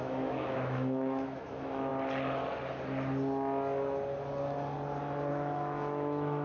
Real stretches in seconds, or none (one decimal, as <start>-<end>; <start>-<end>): 1.9-5.3